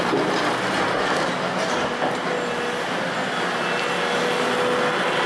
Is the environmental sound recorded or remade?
recorded